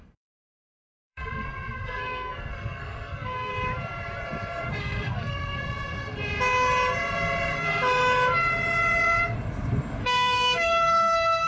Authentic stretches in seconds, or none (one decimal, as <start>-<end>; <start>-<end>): 3.5-4.8; 5.6-10.0